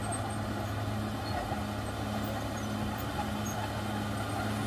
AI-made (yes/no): no